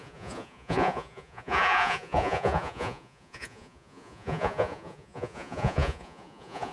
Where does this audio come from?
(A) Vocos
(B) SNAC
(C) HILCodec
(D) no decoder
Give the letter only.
A